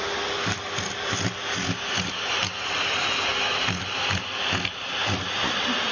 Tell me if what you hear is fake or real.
real